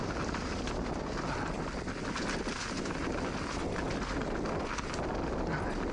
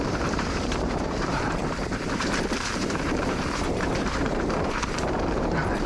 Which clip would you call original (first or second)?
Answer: first